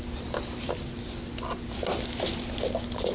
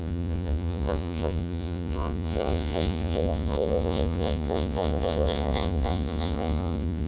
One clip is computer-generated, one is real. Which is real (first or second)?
first